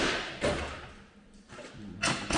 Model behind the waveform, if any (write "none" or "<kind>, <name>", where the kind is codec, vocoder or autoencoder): none